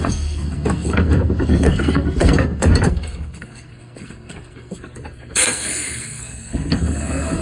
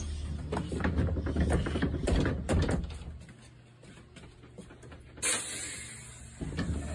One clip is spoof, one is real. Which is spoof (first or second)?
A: first